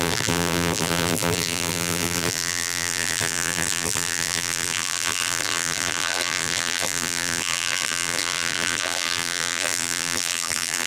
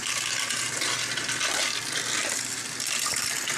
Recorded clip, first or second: second